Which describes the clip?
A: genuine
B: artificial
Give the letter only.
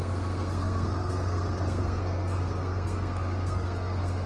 B